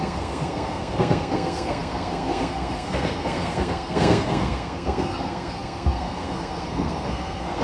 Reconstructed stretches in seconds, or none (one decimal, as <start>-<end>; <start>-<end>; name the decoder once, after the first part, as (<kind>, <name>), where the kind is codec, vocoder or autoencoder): 0.0-7.6 (codec, SNAC)

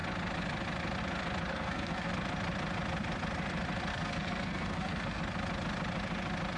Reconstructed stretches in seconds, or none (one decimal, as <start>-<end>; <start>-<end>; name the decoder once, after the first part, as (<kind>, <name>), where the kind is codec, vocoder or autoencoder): 1.5-2.1 (codec, SNAC); 3.9-5.2

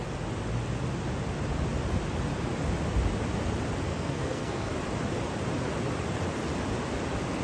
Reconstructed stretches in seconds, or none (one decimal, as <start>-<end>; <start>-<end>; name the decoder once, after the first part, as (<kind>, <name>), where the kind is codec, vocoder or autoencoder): 3.9-4.7 (codec, SNAC)

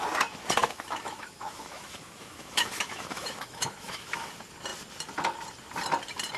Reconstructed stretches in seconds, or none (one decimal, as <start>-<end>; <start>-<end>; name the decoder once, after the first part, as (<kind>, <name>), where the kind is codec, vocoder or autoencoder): 0.6-4.3 (autoencoder, DAC-VAE)

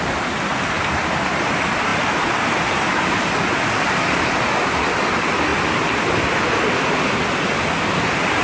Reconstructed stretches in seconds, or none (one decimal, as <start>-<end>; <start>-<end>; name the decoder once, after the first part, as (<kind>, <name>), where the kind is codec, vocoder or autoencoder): none